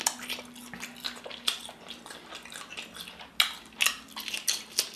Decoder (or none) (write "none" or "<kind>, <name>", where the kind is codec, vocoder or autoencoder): none